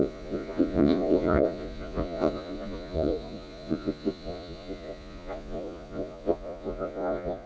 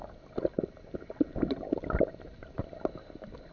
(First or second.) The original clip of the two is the second